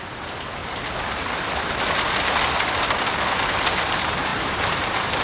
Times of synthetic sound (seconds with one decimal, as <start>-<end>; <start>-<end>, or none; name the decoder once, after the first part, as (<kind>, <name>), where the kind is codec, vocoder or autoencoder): 0.0-0.6 (vocoder, BigVGAN v2); 3.6-5.2